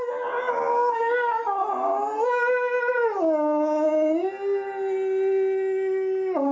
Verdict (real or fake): real